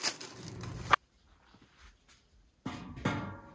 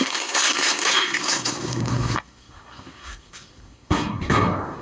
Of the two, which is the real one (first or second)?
first